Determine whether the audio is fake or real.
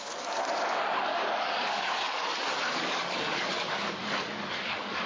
fake